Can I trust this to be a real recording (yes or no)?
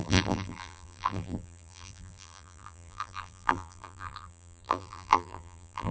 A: no